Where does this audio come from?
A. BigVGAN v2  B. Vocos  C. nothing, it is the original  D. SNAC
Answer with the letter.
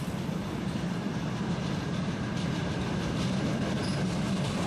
A